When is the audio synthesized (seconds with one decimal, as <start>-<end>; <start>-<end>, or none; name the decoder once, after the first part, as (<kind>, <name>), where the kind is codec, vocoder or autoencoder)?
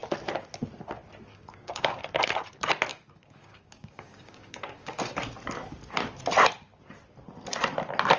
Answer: 1.3-2.0 (codec, DAC); 2.9-5.0